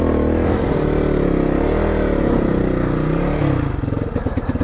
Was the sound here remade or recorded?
recorded